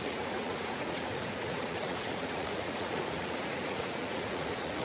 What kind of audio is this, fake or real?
fake